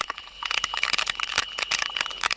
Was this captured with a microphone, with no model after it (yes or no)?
no